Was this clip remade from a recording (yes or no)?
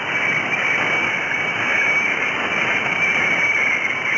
no